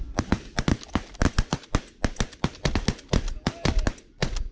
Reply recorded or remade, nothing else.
recorded